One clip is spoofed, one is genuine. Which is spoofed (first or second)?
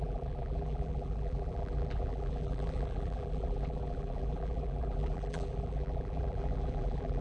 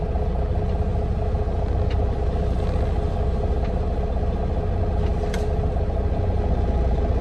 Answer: first